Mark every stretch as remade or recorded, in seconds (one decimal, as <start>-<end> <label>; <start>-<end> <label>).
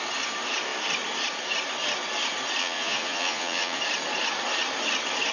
0.0-2.6 recorded; 2.6-3.8 remade; 3.8-5.3 recorded